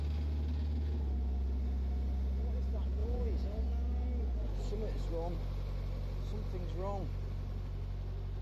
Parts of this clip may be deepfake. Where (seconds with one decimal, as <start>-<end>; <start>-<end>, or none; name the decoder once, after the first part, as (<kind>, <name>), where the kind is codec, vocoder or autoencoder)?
3.0-3.6 (vocoder, Vocos)